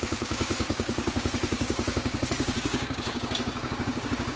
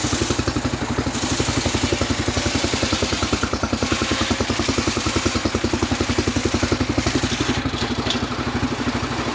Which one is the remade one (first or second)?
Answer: first